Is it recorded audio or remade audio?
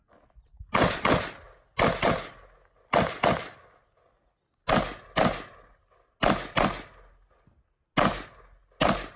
recorded